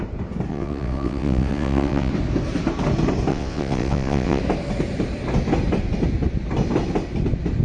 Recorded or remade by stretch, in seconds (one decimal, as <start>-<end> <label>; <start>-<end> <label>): 0.0-0.5 recorded; 0.5-2.1 remade; 2.1-3.3 recorded; 3.3-4.4 remade; 4.4-7.6 recorded